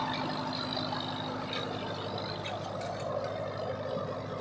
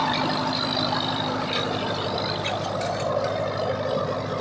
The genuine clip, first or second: first